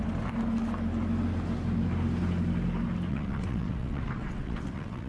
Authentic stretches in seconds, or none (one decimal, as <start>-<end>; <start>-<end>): 0.0-3.1